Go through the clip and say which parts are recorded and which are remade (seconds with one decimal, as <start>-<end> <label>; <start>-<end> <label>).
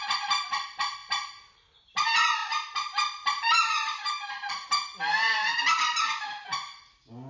0.0-7.3 recorded